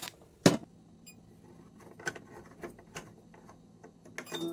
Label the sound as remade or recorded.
recorded